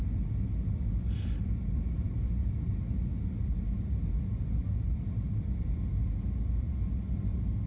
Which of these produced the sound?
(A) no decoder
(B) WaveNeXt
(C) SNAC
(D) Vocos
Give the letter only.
A